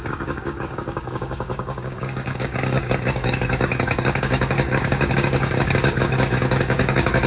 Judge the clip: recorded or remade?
remade